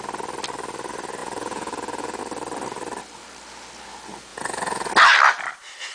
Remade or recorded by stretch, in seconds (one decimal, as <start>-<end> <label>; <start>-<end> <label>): 0.0-1.2 recorded; 1.2-2.2 remade; 2.2-4.3 recorded; 4.3-4.9 remade; 4.9-5.9 recorded